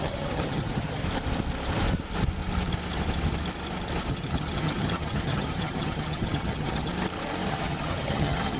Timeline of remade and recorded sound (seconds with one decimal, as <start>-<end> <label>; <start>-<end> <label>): 0.0-1.0 remade; 1.0-4.1 recorded; 4.1-6.9 remade; 6.9-7.5 recorded; 7.5-8.6 remade